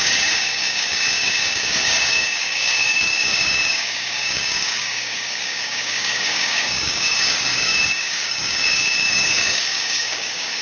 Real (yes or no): no